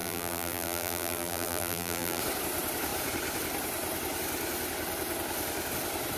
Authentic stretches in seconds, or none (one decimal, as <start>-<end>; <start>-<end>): 2.2-6.2

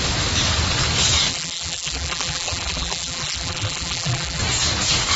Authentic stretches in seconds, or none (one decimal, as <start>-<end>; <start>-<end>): 0.0-1.3; 4.4-5.2